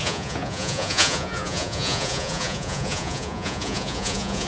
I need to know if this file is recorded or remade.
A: remade